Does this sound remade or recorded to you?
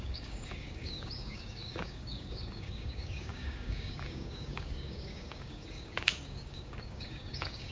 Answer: remade